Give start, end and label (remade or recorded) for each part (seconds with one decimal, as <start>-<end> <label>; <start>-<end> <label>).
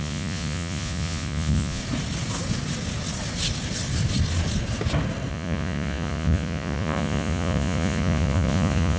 0.0-1.8 remade; 1.8-5.3 recorded; 5.3-9.0 remade